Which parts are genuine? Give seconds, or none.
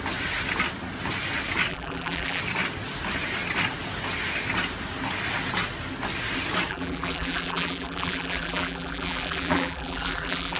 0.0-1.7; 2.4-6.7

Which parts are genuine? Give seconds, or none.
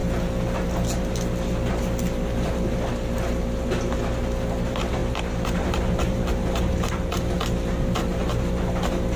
0.0-9.2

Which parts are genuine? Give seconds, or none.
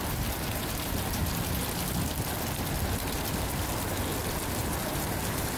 1.2-4.6